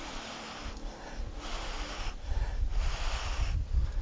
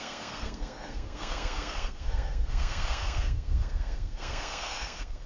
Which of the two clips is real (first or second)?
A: first